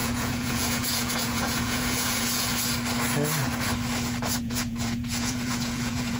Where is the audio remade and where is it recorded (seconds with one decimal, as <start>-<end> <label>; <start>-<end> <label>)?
0.0-2.5 remade; 2.5-4.4 recorded; 4.4-6.2 remade